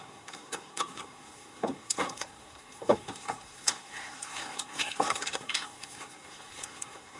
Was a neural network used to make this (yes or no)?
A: yes